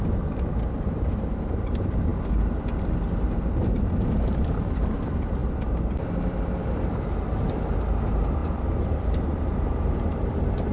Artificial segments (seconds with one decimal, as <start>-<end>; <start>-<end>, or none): 0.0-2.1; 3.3-10.7